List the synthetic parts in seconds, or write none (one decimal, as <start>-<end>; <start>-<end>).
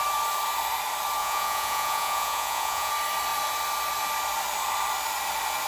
1.2-2.9